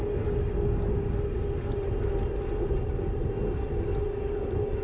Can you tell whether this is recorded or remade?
recorded